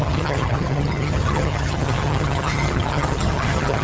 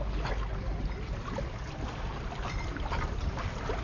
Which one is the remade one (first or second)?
first